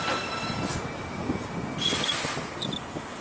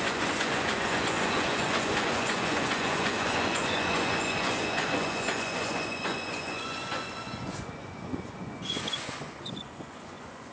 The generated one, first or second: second